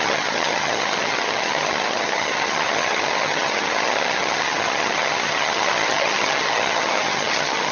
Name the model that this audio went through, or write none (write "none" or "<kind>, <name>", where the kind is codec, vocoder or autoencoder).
vocoder, HiFi-GAN